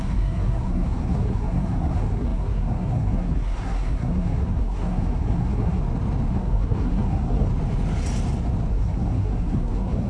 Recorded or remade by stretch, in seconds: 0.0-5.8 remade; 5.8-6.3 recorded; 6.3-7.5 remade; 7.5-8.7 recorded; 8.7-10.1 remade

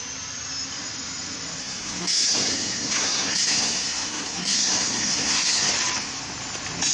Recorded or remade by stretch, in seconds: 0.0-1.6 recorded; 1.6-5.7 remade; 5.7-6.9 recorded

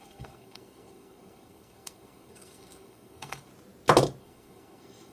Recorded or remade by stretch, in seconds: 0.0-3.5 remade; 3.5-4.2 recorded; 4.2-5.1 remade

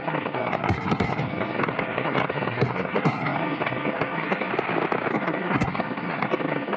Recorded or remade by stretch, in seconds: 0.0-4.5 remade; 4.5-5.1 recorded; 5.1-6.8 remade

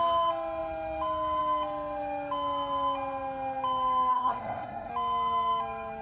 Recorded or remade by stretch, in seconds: 0.0-4.1 recorded; 4.1-4.9 remade; 4.9-6.0 recorded

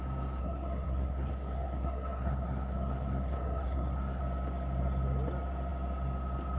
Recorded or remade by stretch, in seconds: 0.0-0.4 recorded; 0.4-4.2 remade; 4.2-6.6 recorded